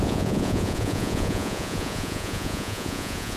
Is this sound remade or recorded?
remade